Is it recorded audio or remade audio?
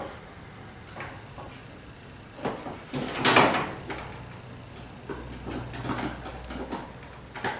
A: recorded